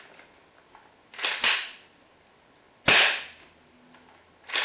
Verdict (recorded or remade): recorded